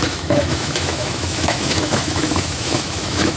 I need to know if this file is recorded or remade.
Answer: remade